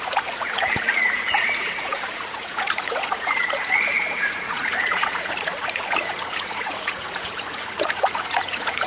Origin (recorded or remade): remade